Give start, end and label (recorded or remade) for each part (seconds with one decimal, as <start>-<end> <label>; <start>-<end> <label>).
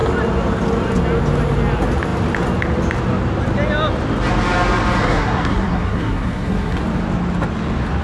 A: 0.0-5.0 recorded; 5.0-6.8 remade; 6.8-8.0 recorded